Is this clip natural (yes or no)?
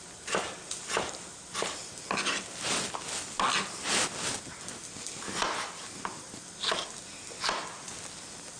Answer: yes